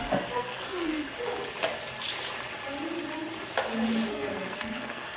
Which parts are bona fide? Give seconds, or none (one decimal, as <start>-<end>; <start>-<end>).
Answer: 1.0-4.1

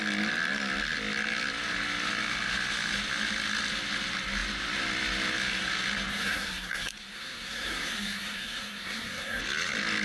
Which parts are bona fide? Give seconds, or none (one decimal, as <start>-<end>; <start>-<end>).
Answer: 0.0-6.1; 9.4-10.0

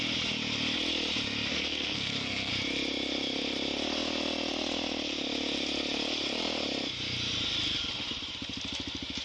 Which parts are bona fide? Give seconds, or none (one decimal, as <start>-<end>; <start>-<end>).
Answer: 0.0-1.5; 2.5-9.2

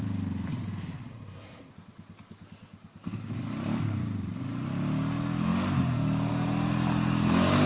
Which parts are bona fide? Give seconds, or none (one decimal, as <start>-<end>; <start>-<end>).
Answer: 0.0-1.1; 1.7-7.7